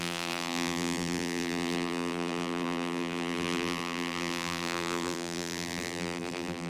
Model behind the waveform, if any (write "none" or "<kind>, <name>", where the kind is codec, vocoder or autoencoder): vocoder, BigVGAN v2